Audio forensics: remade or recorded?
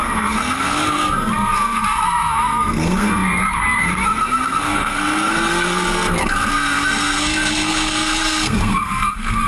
remade